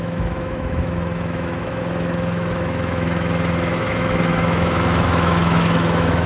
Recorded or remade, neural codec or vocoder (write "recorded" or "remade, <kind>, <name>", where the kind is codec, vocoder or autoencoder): remade, autoencoder, DAC-VAE